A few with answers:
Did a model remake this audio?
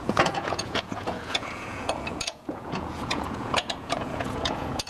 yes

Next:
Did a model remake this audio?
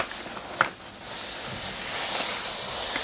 no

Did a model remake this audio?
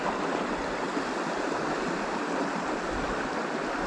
no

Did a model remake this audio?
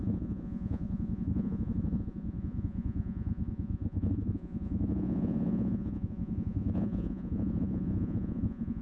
yes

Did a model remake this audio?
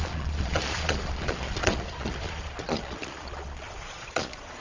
yes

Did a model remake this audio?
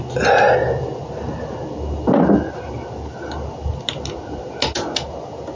no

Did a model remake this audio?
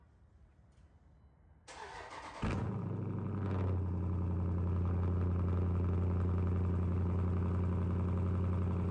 no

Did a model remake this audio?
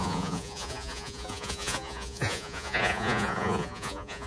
yes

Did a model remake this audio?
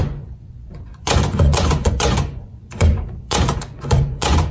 yes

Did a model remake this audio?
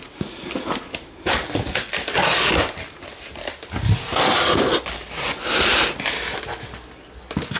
no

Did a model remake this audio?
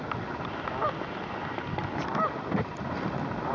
no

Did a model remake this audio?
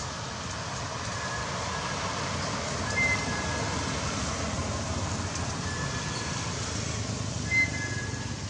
no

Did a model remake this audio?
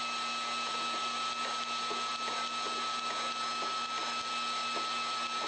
no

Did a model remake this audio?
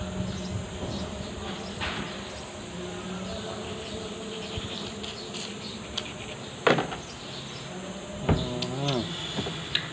no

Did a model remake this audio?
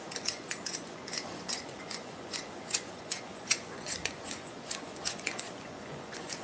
yes